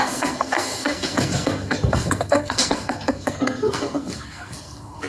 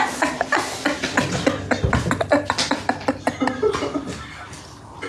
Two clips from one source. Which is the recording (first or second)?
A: second